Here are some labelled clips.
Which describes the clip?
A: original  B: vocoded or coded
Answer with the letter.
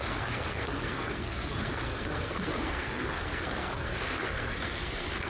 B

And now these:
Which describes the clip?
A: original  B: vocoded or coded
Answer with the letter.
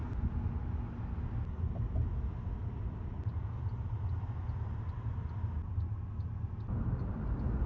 A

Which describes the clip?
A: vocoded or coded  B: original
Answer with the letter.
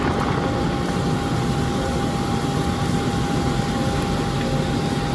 B